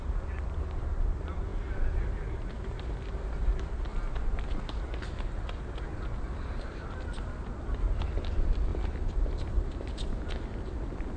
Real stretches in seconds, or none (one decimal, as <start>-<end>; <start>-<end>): 0.0-3.9; 4.9-8.7; 10.1-11.2